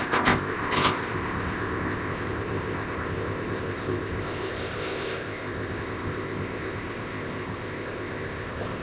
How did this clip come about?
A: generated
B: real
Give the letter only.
A